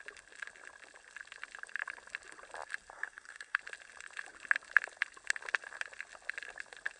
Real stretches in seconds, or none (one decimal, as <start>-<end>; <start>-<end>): 0.0-2.9; 3.6-7.0